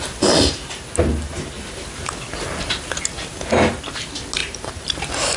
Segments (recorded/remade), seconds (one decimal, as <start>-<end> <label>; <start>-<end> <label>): 0.0-4.4 recorded; 4.4-5.0 remade; 5.0-5.4 recorded